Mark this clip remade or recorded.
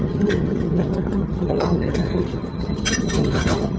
remade